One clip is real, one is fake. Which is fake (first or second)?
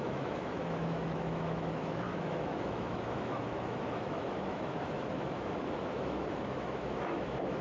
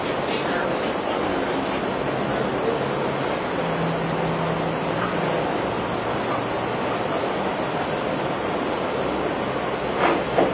first